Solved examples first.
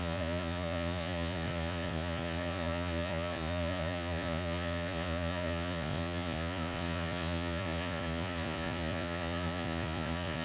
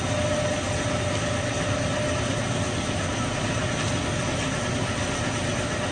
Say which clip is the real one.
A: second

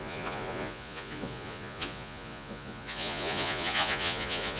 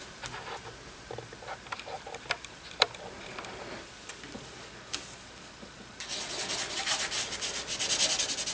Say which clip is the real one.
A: second